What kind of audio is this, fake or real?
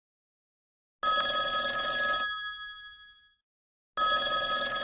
real